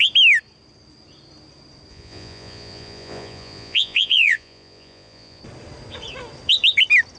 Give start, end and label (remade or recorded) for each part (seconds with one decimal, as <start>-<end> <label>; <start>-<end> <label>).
0.0-1.9 recorded; 1.9-5.4 remade; 5.4-7.2 recorded